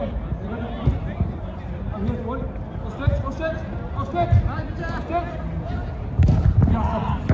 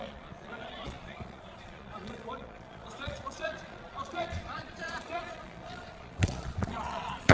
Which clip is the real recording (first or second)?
first